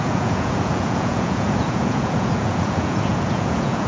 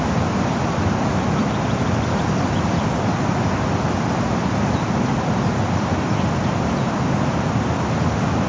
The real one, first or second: second